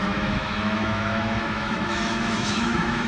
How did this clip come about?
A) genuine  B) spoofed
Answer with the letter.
B